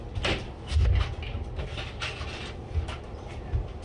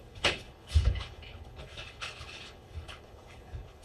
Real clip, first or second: first